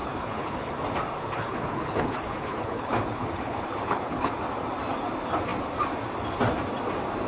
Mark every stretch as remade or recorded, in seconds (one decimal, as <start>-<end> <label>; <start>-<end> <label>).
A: 0.0-0.7 remade; 0.7-1.2 recorded; 1.2-4.4 remade; 4.4-7.3 recorded

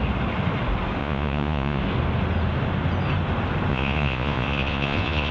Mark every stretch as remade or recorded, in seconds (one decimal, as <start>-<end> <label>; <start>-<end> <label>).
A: 0.0-1.0 recorded; 1.0-1.8 remade; 1.8-3.7 recorded; 3.7-5.3 remade

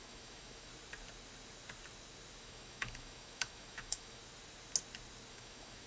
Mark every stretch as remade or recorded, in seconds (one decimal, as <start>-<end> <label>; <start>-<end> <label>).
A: 0.0-0.7 remade; 0.7-2.4 recorded; 2.4-4.2 remade; 4.2-5.3 recorded; 5.3-5.9 remade

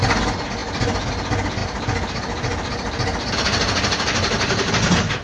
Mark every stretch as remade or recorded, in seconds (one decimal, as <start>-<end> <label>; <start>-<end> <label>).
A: 0.0-5.2 recorded

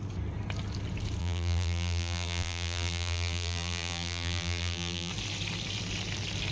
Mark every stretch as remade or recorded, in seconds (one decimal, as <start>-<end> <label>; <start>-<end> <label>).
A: 0.0-1.2 recorded; 1.2-5.1 remade; 5.1-6.5 recorded